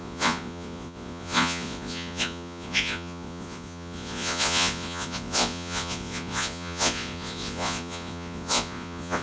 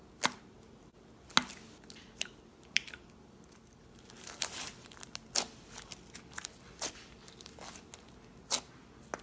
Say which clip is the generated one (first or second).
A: first